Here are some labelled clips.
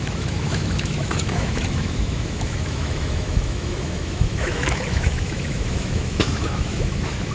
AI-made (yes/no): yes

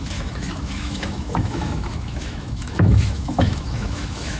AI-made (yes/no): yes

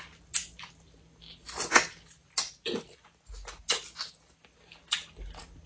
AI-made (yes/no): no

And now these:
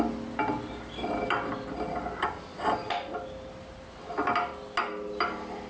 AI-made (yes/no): no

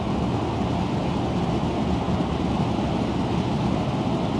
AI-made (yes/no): no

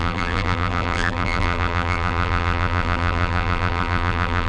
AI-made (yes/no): yes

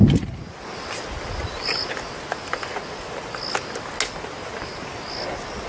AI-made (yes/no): no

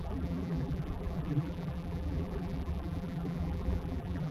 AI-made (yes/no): yes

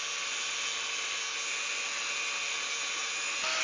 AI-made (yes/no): no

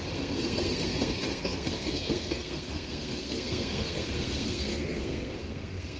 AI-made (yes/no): yes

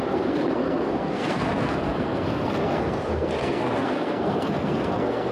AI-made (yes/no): yes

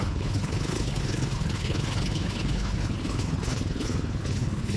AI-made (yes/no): yes